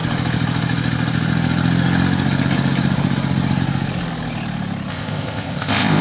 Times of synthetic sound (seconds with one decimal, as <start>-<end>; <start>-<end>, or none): 4.9-6.0